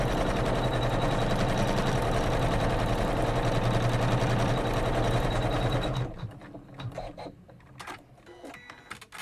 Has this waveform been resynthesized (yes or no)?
no